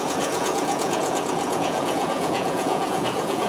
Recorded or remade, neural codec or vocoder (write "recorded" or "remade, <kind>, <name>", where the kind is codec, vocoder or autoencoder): remade, vocoder, Vocos